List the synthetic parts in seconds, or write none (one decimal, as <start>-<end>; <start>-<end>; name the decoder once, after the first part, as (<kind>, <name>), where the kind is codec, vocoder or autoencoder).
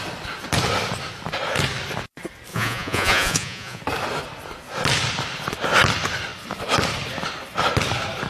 2.5-3.8 (vocoder, Vocos)